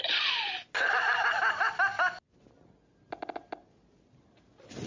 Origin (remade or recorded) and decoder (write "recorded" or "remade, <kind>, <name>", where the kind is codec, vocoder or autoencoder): recorded